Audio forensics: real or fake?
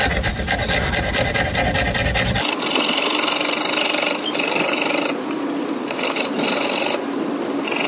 real